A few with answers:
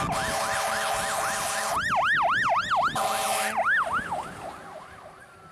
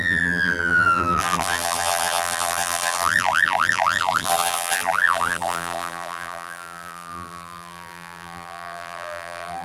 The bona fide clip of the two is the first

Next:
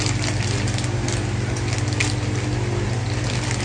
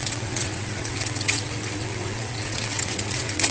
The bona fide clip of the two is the first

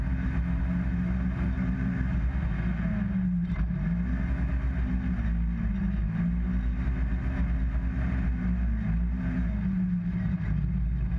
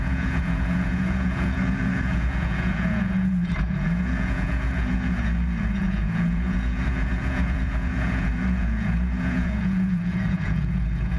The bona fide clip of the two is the first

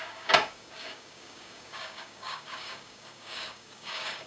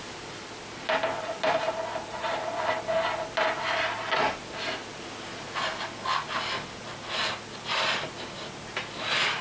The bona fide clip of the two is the second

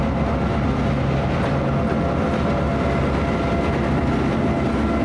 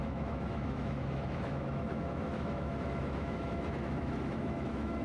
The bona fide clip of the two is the first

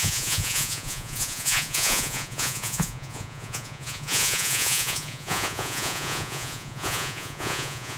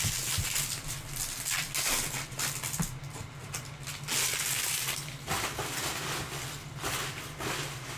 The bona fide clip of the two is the second